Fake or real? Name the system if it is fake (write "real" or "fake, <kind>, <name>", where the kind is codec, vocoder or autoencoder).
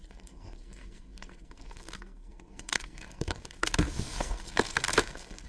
fake, codec, SNAC